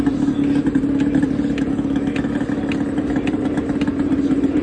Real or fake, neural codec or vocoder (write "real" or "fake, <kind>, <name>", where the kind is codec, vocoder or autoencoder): real